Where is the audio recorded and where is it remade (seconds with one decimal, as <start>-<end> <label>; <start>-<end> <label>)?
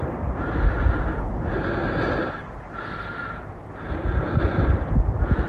0.0-2.5 remade; 2.5-5.5 recorded